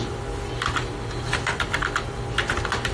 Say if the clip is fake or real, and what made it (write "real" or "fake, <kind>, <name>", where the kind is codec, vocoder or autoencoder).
real